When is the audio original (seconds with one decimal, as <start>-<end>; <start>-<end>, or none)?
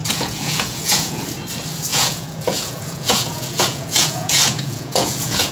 1.2-1.9